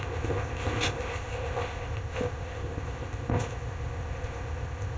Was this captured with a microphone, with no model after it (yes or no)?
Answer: no